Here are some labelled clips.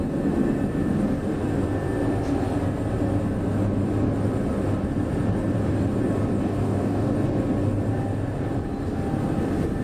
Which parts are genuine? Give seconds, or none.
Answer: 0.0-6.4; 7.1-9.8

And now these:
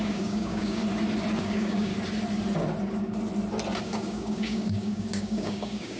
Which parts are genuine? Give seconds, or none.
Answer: 0.8-1.4; 1.9-3.8

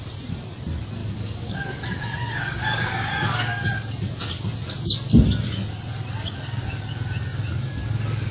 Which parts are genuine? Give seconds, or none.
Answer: 0.0-1.0; 3.7-8.3

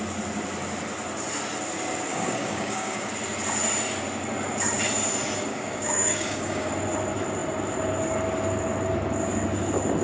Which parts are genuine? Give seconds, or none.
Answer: 0.0-2.1; 3.1-5.5; 6.7-10.0

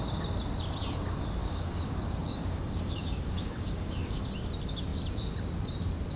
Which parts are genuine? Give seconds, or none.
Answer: 0.0-1.4; 4.2-6.2

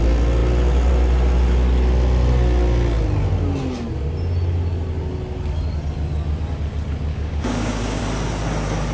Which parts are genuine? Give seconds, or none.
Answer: 0.0-7.1; 8.0-8.9

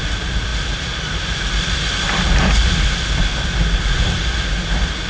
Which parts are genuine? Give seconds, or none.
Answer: 0.0-5.1